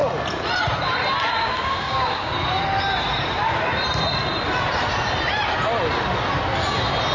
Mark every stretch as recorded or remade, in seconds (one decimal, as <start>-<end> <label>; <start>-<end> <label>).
0.0-1.4 recorded; 1.4-2.3 remade; 2.3-7.1 recorded